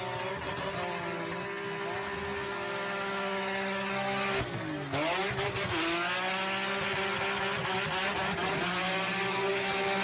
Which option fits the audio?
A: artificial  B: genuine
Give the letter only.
B